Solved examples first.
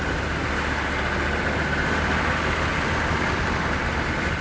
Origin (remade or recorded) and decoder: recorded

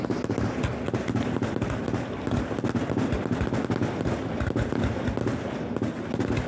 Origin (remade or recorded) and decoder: recorded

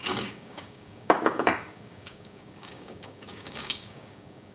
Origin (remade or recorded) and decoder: remade, codec, DAC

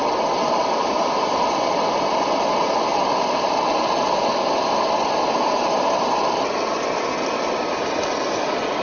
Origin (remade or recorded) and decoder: recorded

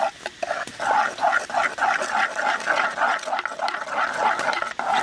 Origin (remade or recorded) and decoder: recorded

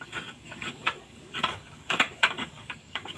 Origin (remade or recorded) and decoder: remade, codec, DAC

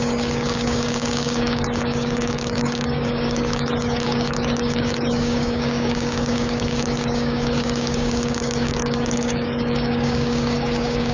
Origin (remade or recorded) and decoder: remade, codec, DAC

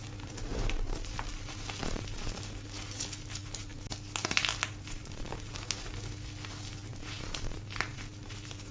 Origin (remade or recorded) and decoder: recorded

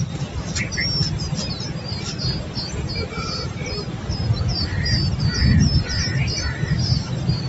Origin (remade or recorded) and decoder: recorded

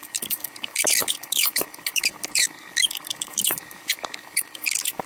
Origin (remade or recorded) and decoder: remade, codec, DAC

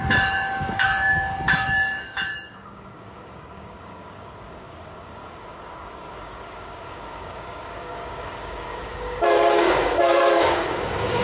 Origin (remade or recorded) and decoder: remade, codec, DAC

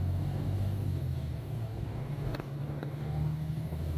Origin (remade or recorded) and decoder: remade, codec, DAC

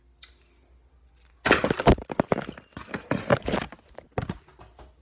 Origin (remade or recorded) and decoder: recorded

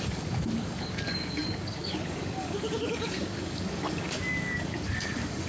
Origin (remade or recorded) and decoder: remade, codec, DAC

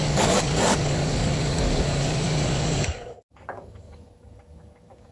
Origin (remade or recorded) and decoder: remade, codec, DAC